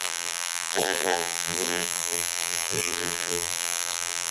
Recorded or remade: remade